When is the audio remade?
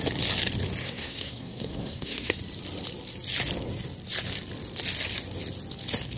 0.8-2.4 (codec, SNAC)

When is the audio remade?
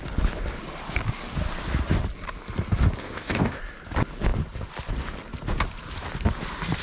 3.0-3.6 (codec, ZipCodec)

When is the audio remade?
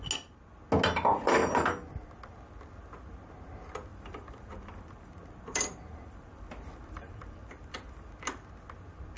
3.9-8.1 (vocoder, BigVGAN v2)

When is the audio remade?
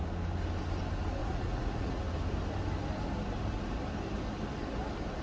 1.2-2.0 (vocoder, Vocos)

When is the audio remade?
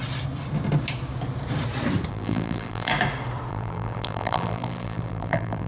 2.1-2.9 (vocoder, BigVGAN v2); 3.5-5.7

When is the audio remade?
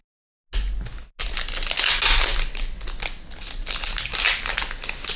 none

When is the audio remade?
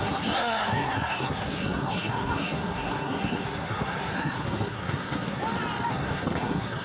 0.0-5.4 (codec, SNAC); 5.9-6.8